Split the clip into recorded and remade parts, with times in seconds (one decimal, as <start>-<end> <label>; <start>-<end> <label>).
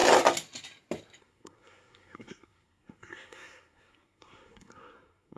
0.0-1.2 recorded; 1.2-5.4 remade